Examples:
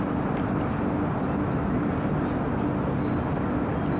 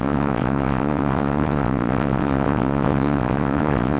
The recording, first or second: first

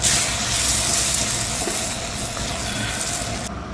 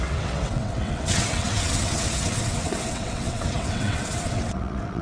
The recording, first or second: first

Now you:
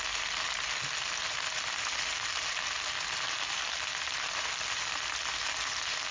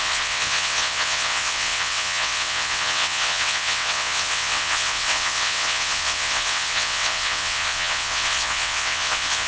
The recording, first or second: first